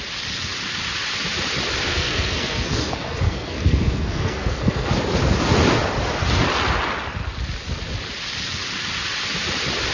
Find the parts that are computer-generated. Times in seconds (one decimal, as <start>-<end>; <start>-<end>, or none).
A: 1.9-4.9